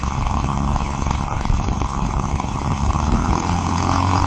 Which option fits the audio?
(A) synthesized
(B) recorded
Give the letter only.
A